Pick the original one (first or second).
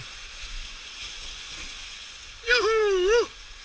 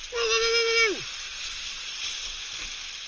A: second